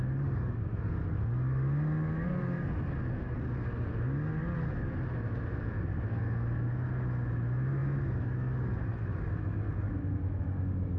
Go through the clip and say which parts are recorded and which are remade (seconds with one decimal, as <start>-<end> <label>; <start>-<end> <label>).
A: 0.0-11.0 recorded